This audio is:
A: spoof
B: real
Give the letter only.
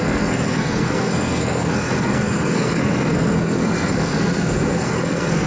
A